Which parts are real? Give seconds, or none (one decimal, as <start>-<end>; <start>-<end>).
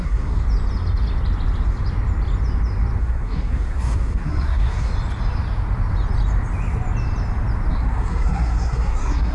0.4-3.0; 4.9-7.7